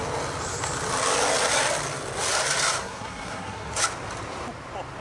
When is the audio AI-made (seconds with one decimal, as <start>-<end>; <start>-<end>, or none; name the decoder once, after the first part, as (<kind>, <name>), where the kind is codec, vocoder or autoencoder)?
2.8-3.8 (codec, SNAC)